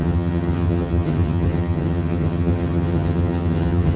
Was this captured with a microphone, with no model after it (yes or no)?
no